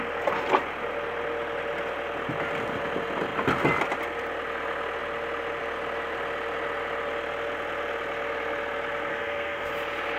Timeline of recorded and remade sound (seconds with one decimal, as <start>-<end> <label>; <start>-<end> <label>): 0.0-9.1 recorded; 9.1-9.7 remade; 9.7-10.2 recorded